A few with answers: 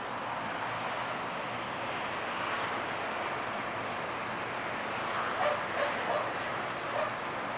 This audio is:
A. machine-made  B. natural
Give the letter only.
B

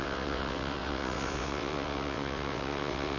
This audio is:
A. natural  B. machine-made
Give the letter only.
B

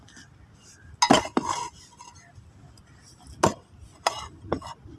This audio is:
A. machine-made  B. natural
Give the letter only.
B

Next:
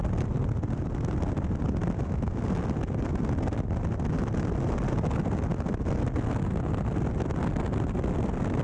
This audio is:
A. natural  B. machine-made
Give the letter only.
A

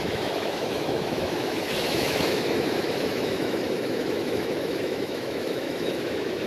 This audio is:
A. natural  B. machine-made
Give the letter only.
B